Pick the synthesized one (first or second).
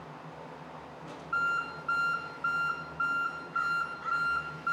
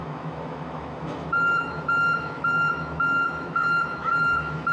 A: second